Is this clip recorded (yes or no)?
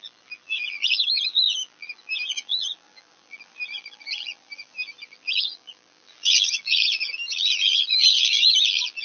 no